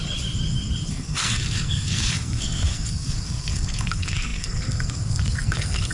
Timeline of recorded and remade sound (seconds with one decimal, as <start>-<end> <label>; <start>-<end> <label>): 0.0-0.9 recorded; 0.9-5.9 remade